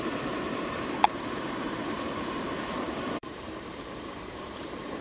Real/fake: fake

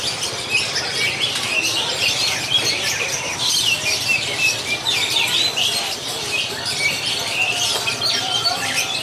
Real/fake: fake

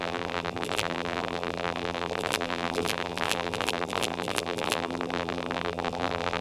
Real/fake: fake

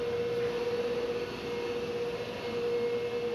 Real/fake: real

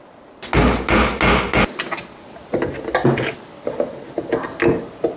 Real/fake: real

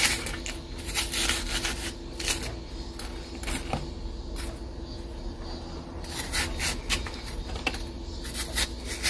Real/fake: real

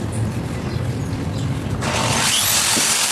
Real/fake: fake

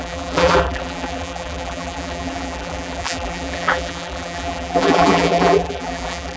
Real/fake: fake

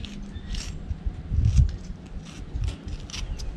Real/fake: real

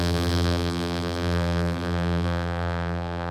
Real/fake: fake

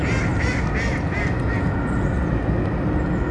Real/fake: real